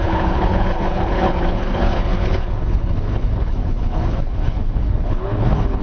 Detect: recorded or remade remade